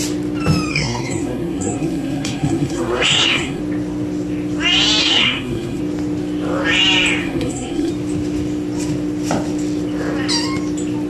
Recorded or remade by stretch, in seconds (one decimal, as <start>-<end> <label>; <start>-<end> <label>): 0.0-0.7 recorded; 0.7-3.6 remade; 3.6-5.0 recorded; 5.0-5.8 remade; 5.8-7.2 recorded; 7.2-7.9 remade; 7.9-11.1 recorded